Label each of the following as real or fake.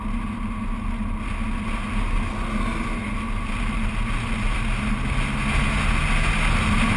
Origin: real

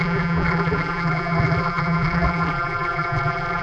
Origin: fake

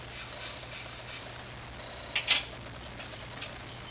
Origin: real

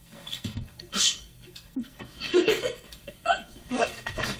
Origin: fake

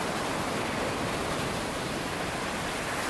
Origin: real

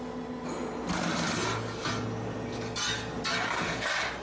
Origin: real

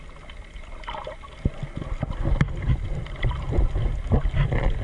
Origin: real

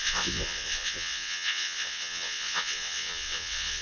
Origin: fake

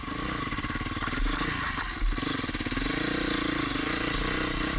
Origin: real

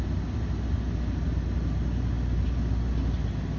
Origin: real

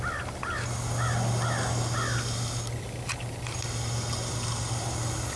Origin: real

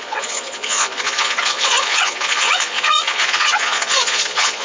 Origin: fake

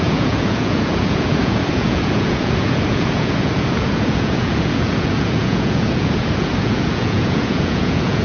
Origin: fake